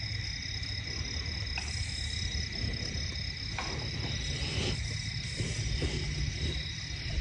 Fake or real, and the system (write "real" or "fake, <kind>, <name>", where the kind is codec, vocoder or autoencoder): real